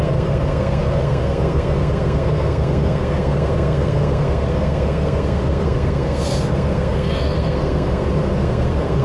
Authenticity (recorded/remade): remade